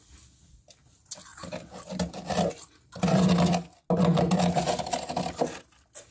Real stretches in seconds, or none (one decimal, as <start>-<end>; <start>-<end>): 0.0-6.1